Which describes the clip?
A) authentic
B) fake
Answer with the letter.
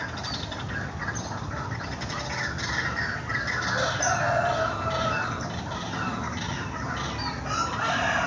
A